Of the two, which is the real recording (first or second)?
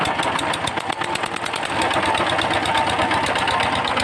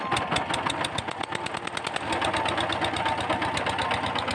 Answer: second